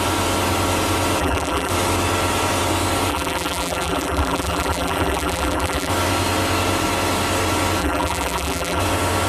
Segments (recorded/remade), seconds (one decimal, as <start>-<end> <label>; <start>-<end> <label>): 0.0-1.2 recorded; 1.2-1.7 remade; 1.7-3.1 recorded; 3.1-5.9 remade; 5.9-7.8 recorded; 7.8-8.8 remade; 8.8-9.3 recorded